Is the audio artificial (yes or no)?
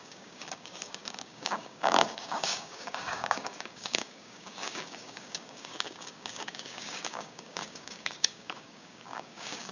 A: yes